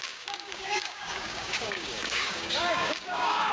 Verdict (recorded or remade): remade